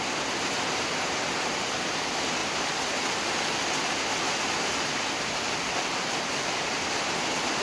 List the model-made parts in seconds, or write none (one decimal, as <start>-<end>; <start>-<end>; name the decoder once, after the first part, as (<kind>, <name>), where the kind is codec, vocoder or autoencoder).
none